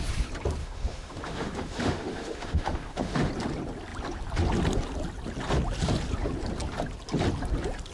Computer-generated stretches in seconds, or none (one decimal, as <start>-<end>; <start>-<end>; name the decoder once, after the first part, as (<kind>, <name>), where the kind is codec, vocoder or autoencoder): 0.6-3.3 (autoencoder, DAC-VAE)